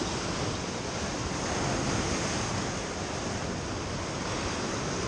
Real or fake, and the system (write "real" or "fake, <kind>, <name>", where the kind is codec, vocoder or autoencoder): real